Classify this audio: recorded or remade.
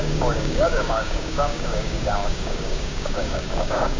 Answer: remade